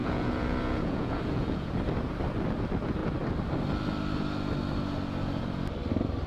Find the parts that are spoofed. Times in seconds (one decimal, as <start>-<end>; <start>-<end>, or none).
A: 0.0-1.7